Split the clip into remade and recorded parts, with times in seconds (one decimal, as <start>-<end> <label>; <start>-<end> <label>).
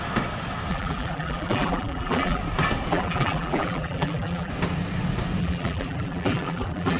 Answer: 0.0-0.7 recorded; 0.7-2.4 remade; 2.4-2.9 recorded; 2.9-4.5 remade; 4.5-5.4 recorded; 5.4-7.0 remade